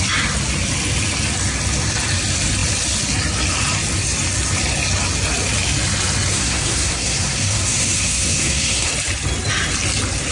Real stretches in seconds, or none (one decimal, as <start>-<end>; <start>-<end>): 0.0-6.3; 8.9-10.3